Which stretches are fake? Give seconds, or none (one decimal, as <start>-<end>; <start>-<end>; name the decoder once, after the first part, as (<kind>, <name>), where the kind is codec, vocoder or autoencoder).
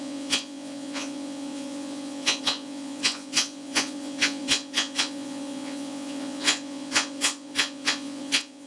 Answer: 0.0-8.7 (vocoder, Vocos)